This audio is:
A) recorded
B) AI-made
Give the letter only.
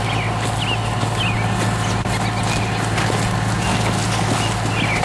A